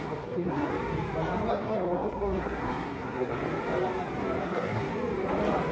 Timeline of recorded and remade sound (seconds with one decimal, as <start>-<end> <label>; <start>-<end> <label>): 0.0-0.7 remade; 0.7-1.5 recorded; 1.5-3.4 remade; 3.4-4.4 recorded; 4.4-4.9 remade; 4.9-5.7 recorded